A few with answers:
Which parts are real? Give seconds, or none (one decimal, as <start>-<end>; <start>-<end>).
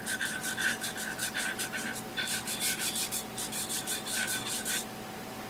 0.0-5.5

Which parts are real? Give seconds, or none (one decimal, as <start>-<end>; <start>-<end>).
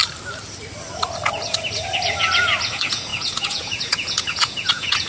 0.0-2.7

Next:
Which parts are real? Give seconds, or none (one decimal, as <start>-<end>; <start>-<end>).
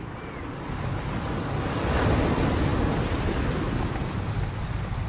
0.0-5.1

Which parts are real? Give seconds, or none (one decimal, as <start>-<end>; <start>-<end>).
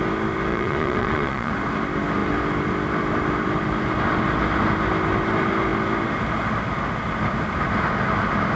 0.0-0.5; 1.5-8.6